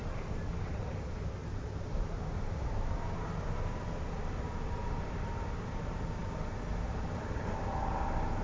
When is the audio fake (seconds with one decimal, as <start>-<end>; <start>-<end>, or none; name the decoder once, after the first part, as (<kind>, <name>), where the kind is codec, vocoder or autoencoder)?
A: 0.0-8.4 (vocoder, BigVGAN v2)